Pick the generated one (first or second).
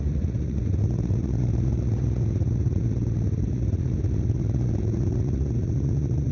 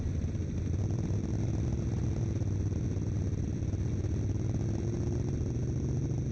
first